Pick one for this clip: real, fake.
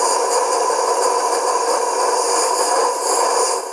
real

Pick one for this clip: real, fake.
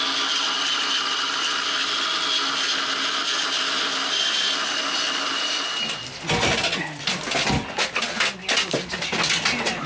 real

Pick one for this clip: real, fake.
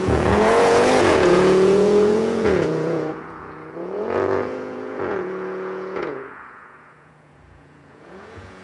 fake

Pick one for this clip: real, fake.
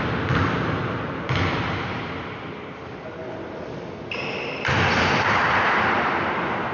real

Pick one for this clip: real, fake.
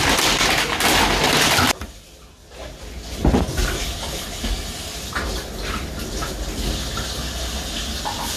real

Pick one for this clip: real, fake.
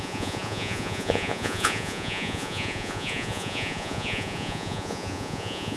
fake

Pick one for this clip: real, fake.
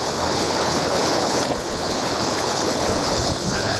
fake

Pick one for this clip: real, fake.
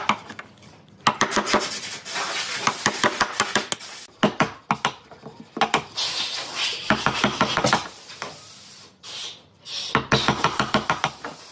real